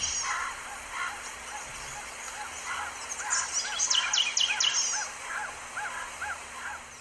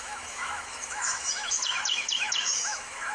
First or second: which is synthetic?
second